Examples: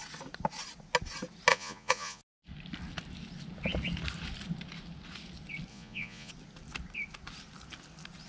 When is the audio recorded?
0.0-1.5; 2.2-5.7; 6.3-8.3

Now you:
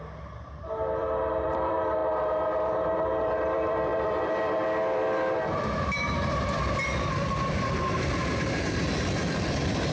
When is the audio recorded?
2.0-3.2

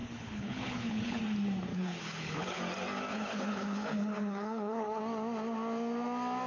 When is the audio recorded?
1.2-1.7; 2.6-3.1; 5.0-6.5

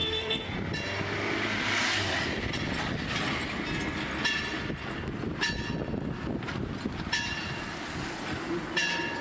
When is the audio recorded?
0.5-9.2

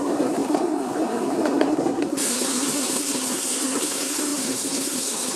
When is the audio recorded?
none

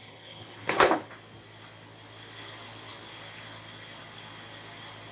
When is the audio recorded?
1.1-5.1

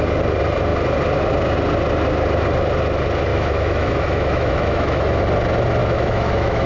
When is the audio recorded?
0.0-3.3; 5.2-5.8

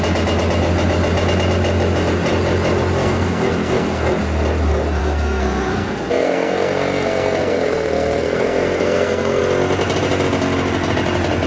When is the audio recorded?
0.0-3.0; 4.2-5.0; 9.4-11.5